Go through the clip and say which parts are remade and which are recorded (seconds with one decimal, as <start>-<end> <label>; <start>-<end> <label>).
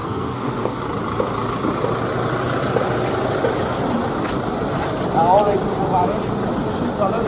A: 0.0-0.8 remade; 0.8-7.3 recorded